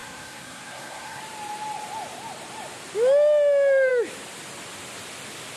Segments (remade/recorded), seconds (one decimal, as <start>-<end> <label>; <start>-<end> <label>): 0.0-1.2 remade; 1.2-5.6 recorded